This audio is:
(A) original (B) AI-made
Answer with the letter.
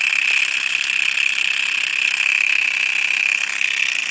A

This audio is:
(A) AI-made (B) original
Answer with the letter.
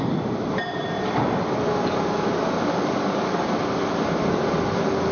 B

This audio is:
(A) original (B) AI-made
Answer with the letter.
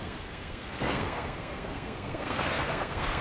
B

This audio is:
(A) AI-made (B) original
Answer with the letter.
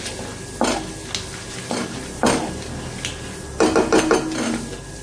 B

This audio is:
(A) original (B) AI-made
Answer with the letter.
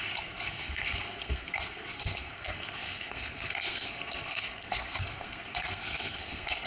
B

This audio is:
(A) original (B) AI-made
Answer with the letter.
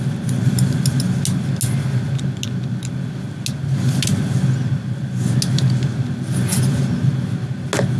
A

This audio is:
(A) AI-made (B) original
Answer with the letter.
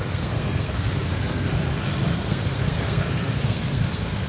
A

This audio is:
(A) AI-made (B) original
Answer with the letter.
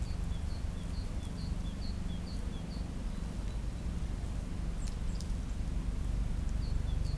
B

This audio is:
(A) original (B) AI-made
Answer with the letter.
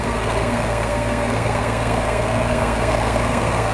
B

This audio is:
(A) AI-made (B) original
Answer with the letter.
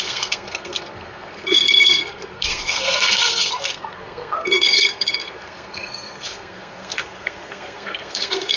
A